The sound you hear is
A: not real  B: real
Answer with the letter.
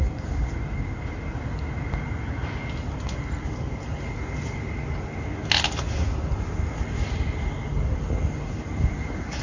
B